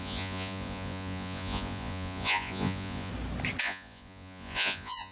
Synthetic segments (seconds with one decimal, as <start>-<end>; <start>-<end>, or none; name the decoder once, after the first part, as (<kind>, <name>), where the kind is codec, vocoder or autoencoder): 0.0-3.1 (vocoder, Vocos); 3.6-5.1